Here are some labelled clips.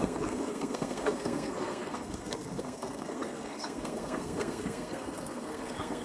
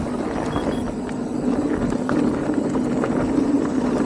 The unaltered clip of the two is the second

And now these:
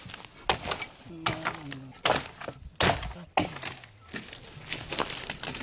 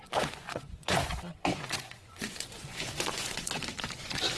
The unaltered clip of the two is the first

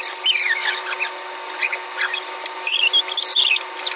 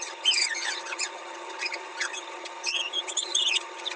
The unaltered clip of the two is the first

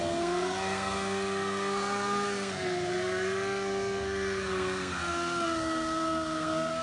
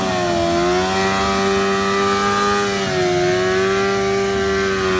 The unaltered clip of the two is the second